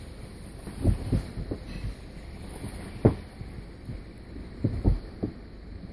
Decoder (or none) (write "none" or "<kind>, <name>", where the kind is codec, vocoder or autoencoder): none